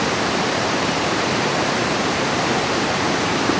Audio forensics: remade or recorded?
remade